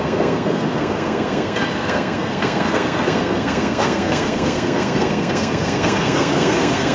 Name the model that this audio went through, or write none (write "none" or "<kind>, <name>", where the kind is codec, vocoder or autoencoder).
codec, SNAC